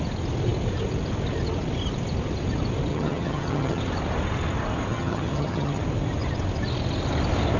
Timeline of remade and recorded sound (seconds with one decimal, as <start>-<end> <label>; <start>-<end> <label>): 0.0-2.9 recorded; 2.9-3.8 remade; 3.8-4.9 recorded; 4.9-5.8 remade; 5.8-7.6 recorded